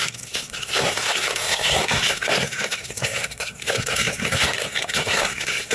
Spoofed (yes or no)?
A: yes